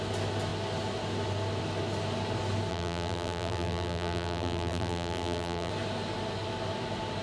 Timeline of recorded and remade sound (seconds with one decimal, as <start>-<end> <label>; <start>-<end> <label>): 0.0-2.7 recorded; 2.7-5.7 remade; 5.7-7.2 recorded

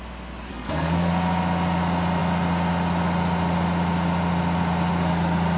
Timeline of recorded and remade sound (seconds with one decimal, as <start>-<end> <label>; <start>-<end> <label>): 0.0-0.5 recorded; 0.5-1.1 remade; 1.1-5.6 recorded